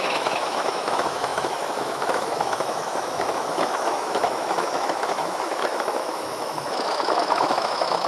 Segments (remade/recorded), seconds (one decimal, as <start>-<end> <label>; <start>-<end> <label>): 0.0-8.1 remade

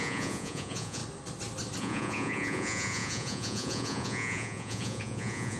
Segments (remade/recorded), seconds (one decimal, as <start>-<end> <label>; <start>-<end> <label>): 0.0-1.0 remade; 1.0-1.8 recorded; 1.8-5.6 remade

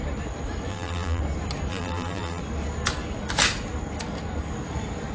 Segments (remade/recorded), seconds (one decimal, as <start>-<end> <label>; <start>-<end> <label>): 0.0-0.7 recorded; 0.7-1.2 remade; 1.2-1.7 recorded; 1.7-2.4 remade; 2.4-5.1 recorded

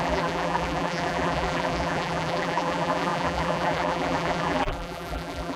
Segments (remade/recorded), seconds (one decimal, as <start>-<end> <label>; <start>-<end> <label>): 0.0-5.6 remade

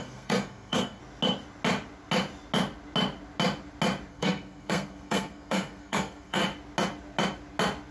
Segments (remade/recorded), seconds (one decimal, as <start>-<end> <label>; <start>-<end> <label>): 0.0-1.0 remade; 1.0-4.1 recorded; 4.1-6.4 remade; 6.4-7.9 recorded

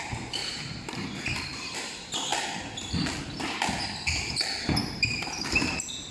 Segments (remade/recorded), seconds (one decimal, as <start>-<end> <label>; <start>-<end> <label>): 0.0-0.4 recorded; 0.4-1.4 remade; 1.4-4.8 recorded; 4.8-6.1 remade